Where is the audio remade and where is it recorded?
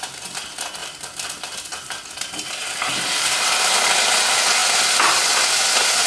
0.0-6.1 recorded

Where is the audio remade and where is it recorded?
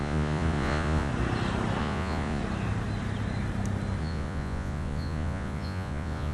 0.0-1.1 remade; 1.1-1.8 recorded; 1.8-2.4 remade; 2.4-4.0 recorded; 4.0-6.3 remade